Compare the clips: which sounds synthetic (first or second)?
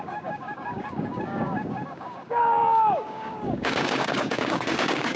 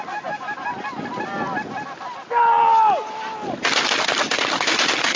first